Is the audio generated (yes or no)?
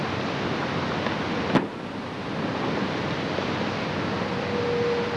no